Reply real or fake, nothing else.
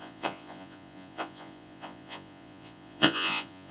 fake